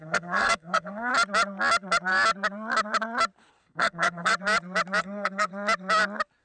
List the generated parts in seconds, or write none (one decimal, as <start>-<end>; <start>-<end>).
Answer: 0.0-1.1; 3.5-4.3; 5.0-5.5